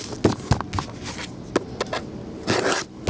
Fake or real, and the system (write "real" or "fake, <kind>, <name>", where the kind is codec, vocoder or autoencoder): real